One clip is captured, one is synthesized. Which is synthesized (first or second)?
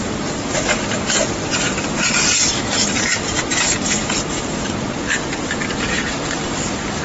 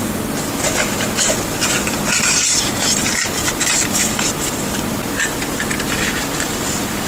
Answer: first